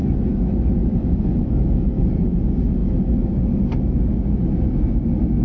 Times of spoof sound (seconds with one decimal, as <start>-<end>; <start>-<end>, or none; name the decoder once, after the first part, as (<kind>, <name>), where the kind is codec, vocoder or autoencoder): 0.0-2.0 (autoencoder, DAC-VAE); 2.8-3.3